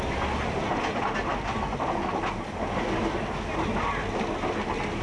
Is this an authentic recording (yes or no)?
yes